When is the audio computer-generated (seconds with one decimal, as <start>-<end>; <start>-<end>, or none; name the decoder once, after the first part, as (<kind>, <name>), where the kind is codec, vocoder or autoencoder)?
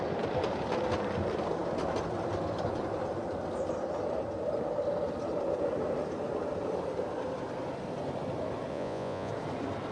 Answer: 8.7-9.3 (vocoder, Vocos)